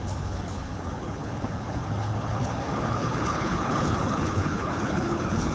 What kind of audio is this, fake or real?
fake